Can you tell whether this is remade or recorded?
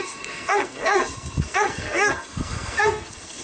remade